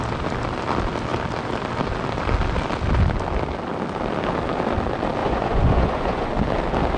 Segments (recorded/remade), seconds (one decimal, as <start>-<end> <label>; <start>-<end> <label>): 0.0-5.2 recorded; 5.2-6.3 remade; 6.3-7.0 recorded